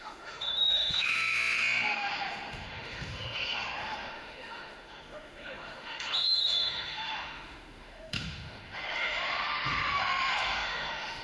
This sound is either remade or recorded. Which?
remade